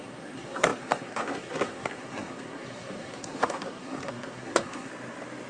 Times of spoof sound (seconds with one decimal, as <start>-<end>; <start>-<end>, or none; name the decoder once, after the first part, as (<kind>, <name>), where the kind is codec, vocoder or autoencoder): 0.0-4.9 (codec, SNAC)